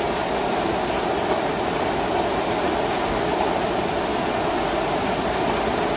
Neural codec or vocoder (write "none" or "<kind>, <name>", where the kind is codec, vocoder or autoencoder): none